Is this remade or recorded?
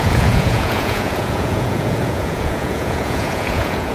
remade